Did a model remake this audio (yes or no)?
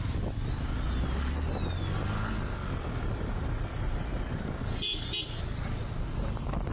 no